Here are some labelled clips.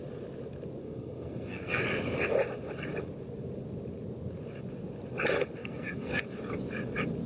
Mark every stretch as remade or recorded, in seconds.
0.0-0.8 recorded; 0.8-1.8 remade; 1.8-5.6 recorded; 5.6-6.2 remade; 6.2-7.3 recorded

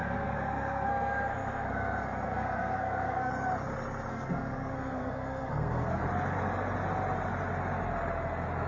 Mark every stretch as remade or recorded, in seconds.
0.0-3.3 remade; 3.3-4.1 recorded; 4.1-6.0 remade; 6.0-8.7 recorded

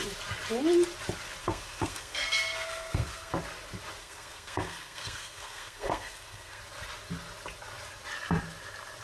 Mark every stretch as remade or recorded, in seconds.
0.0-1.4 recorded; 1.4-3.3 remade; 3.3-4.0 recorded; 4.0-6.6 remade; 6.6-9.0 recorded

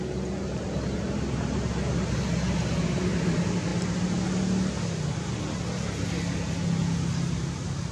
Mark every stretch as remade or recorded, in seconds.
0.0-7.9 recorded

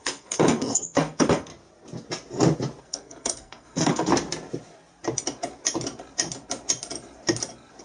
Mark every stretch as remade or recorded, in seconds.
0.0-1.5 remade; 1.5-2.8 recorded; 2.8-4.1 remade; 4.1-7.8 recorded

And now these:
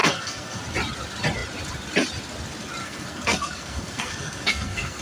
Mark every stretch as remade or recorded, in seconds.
0.0-0.6 remade; 0.6-2.8 recorded; 2.8-5.0 remade

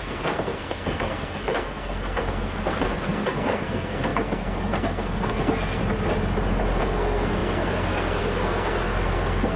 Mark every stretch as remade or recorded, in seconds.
0.0-5.8 remade; 5.8-6.8 recorded; 6.8-9.6 remade